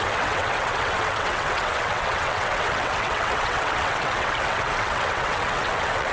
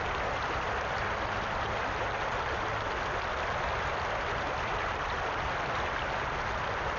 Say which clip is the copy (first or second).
first